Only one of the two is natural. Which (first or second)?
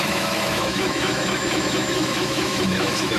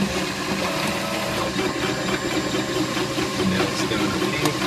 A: second